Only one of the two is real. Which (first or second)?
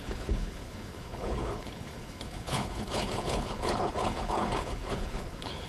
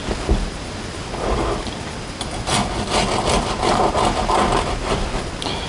second